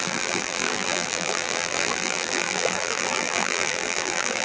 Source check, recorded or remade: remade